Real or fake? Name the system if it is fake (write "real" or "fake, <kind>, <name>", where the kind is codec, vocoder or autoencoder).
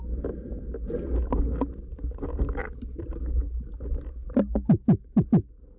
real